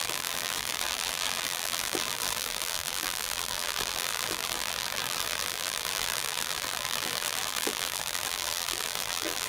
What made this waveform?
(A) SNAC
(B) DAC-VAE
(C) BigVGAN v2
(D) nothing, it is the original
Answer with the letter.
C